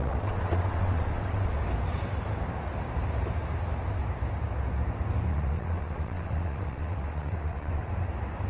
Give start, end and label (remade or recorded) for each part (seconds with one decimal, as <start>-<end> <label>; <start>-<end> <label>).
0.0-1.6 remade; 1.6-5.3 recorded; 5.3-7.8 remade; 7.8-8.5 recorded